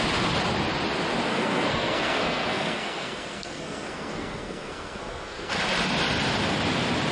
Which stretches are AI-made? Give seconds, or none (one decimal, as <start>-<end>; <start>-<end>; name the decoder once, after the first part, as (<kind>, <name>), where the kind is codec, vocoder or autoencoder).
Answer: 1.3-5.6 (codec, SNAC)

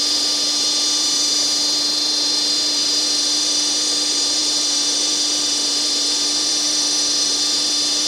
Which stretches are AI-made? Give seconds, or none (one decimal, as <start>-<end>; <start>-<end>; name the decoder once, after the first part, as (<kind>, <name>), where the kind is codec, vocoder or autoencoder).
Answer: 0.0-8.1 (vocoder, BigVGAN v2)

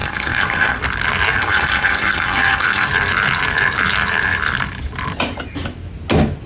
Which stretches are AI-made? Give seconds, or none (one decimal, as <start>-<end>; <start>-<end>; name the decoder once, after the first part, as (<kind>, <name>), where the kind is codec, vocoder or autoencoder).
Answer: 0.0-0.8 (codec, SNAC); 1.4-2.9